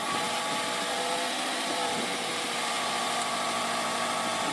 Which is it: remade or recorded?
recorded